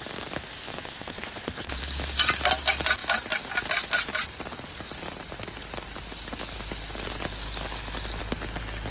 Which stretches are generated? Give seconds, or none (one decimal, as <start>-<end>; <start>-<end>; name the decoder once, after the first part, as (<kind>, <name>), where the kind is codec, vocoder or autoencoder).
0.7-1.8 (vocoder, WaveNeXt)